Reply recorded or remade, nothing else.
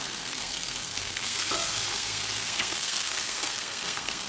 remade